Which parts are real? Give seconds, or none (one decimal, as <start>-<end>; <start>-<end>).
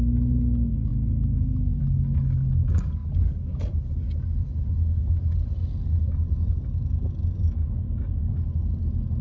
0.0-7.6; 8.3-9.2